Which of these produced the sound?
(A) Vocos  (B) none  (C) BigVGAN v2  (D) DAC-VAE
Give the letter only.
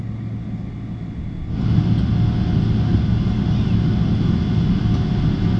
B